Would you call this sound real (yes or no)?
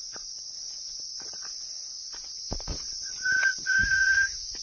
no